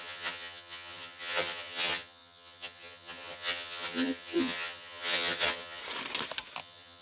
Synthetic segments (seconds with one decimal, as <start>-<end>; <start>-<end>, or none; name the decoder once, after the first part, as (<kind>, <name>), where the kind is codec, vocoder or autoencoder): 0.0-5.8 (vocoder, HiFi-GAN); 6.6-7.0